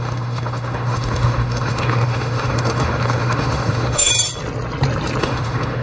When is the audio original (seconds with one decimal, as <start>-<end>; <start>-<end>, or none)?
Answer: 4.1-5.2